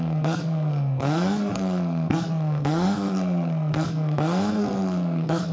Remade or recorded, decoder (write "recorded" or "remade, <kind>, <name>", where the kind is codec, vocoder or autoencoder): remade, codec, SNAC